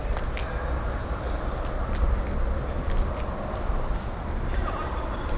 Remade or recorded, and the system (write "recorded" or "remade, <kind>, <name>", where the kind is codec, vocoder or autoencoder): recorded